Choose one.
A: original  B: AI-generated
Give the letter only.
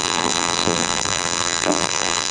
B